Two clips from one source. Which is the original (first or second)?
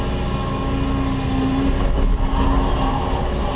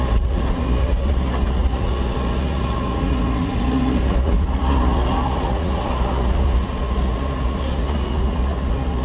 first